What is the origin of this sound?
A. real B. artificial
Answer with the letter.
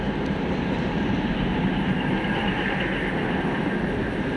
A